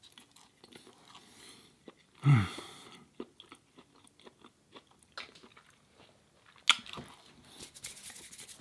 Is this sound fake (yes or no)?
no